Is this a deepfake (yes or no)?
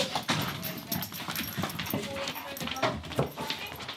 no